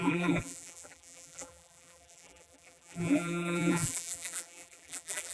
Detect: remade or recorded remade